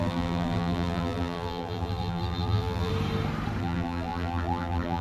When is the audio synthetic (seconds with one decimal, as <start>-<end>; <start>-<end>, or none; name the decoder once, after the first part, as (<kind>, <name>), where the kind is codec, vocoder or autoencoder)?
0.0-2.9 (vocoder, BigVGAN v2); 3.6-5.0